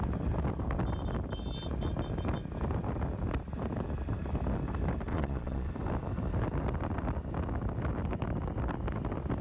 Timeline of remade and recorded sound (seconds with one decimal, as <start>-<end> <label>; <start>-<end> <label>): 0.0-5.1 recorded; 5.1-5.7 remade; 5.7-9.4 recorded